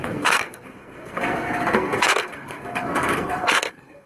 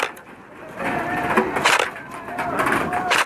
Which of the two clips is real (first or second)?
second